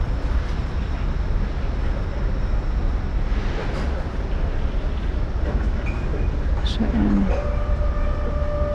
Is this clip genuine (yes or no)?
yes